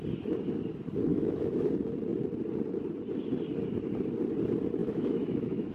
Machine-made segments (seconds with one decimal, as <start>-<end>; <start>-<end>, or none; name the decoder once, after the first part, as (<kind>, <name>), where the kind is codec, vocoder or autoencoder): 1.1-1.7 (autoencoder, DAC-VAE); 4.8-5.7

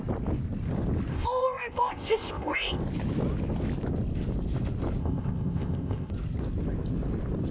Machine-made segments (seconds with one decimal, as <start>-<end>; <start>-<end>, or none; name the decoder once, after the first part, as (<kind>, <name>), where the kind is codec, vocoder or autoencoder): 1.1-2.8 (codec, ZipCodec); 5.0-6.1

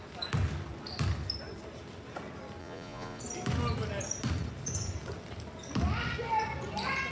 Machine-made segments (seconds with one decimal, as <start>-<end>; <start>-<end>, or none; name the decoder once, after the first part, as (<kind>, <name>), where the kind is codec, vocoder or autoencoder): 2.6-3.2 (vocoder, Vocos)

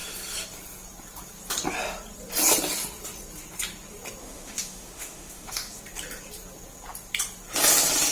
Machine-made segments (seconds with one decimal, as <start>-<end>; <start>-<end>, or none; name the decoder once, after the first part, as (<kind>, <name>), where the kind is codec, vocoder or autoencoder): 4.2-5.8 (autoencoder, DAC-VAE)

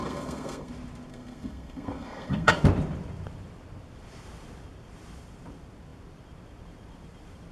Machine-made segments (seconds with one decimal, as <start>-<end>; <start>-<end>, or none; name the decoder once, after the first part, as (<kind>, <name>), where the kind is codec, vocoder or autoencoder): 0.0-0.7 (codec, SNAC); 1.1-2.5

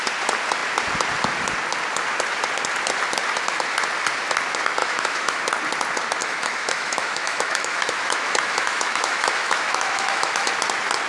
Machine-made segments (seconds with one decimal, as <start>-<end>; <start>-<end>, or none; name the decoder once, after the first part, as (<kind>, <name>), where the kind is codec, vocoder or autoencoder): 4.8-5.4 (autoencoder, DAC-VAE); 6.2-10.5

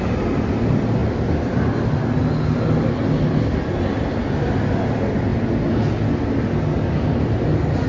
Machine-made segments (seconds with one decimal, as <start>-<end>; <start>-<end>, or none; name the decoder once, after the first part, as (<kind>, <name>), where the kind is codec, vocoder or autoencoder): none